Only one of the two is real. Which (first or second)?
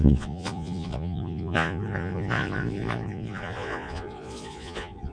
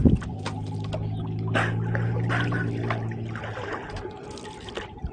second